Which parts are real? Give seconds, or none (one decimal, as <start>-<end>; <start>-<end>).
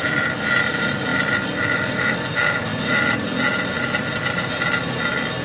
0.0-5.4